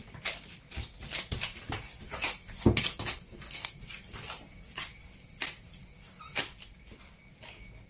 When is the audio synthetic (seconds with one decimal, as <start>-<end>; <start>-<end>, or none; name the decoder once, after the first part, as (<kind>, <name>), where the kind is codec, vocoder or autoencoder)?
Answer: 2.9-3.8 (codec, SNAC)